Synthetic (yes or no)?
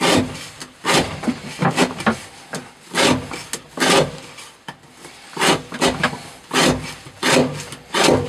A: no